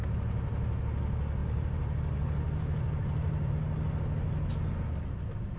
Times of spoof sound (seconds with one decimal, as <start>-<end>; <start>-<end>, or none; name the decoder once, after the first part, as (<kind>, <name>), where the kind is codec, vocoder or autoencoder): 1.4-3.5 (vocoder, BigVGAN v2)